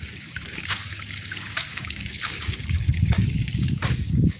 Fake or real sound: fake